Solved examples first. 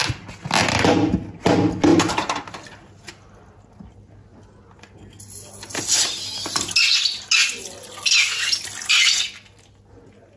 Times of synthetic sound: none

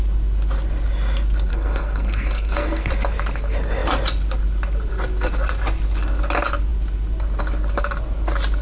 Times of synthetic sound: 1.5-2.9

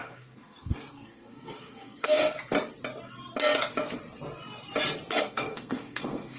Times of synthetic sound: 0.0-2.2; 5.2-6.4

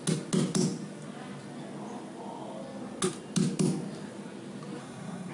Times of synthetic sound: 4.8-5.3

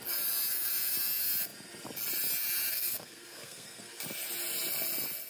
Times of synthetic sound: 2.7-4.0

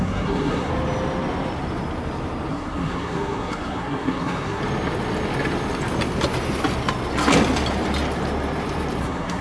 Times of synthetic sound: 0.0-0.7; 2.5-4.6; 9.0-9.4

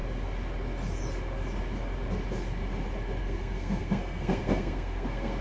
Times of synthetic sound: 3.2-5.4